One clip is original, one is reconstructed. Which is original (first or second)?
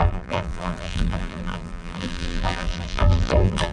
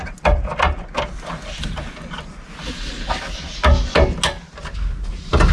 second